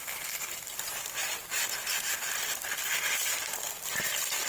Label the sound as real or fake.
real